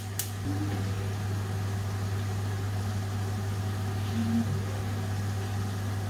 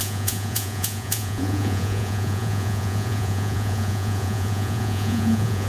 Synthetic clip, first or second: second